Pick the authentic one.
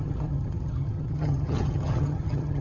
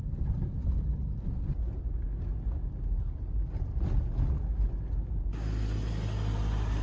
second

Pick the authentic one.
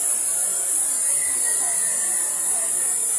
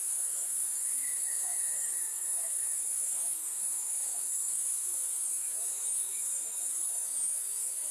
first